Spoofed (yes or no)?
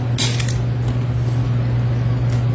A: no